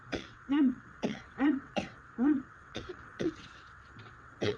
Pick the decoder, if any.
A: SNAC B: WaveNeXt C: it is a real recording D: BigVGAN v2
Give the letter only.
B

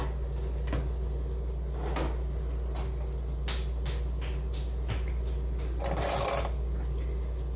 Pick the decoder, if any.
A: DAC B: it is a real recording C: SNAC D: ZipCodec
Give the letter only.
B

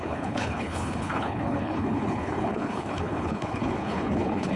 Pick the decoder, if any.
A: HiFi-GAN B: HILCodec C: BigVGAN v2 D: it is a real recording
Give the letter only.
B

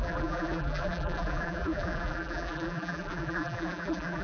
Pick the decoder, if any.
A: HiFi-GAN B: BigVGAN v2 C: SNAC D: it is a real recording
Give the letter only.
B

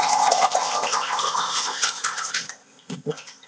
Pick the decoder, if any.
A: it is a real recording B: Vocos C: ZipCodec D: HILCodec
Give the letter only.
C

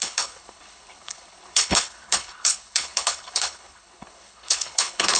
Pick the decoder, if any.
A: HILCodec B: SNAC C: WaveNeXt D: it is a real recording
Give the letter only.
A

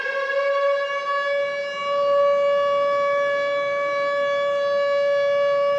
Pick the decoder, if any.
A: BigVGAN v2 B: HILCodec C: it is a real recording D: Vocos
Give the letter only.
C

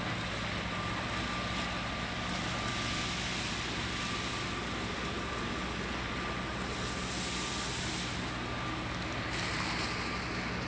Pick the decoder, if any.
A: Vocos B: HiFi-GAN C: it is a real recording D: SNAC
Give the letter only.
C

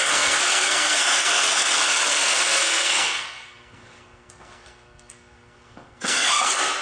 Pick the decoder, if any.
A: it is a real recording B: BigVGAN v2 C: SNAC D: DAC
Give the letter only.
C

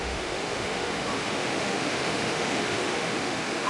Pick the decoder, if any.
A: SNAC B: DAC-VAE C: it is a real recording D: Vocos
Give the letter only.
B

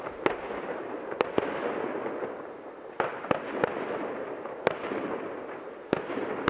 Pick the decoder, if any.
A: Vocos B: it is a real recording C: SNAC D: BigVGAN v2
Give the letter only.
B